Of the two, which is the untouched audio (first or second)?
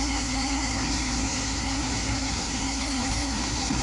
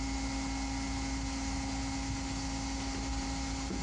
second